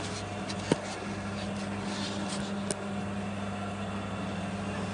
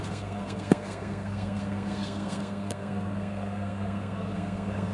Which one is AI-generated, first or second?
second